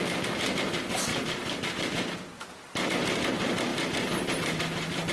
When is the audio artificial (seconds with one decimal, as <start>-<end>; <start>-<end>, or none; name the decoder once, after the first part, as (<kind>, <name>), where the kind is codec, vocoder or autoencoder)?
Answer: none